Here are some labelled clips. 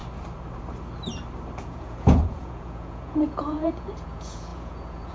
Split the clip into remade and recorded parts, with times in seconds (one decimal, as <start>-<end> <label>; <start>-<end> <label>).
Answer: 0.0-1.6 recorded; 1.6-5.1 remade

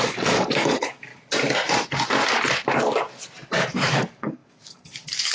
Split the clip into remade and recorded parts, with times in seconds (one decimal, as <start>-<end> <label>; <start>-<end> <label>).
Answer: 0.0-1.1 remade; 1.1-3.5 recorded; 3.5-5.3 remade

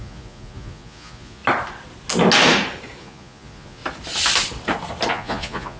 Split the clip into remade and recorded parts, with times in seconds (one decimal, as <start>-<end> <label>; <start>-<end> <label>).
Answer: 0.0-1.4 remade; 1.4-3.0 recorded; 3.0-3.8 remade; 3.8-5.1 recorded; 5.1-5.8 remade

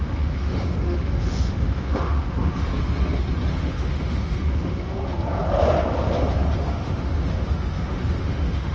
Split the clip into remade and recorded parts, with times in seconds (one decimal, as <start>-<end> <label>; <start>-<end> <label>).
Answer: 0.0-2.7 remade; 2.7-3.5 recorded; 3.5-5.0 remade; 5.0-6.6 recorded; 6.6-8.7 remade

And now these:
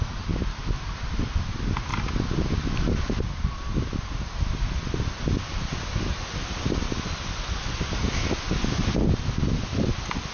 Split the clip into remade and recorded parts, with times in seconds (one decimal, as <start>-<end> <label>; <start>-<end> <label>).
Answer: 0.0-10.3 recorded

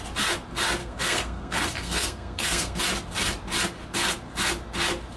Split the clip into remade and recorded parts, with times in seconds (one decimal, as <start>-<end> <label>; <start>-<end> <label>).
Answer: 0.0-0.8 recorded; 0.8-2.8 remade; 2.8-5.2 recorded